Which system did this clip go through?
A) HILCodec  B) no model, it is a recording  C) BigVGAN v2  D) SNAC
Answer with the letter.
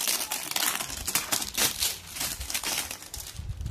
B